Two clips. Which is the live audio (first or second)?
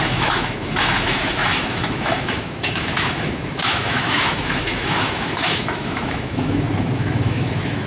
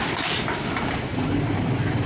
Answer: second